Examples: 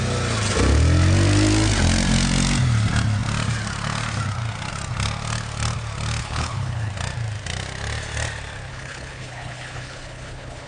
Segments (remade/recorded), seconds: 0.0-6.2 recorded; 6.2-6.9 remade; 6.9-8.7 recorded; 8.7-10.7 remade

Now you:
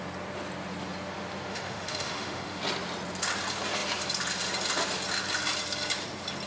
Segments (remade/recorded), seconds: 0.0-1.5 recorded; 1.5-2.6 remade; 2.6-6.5 recorded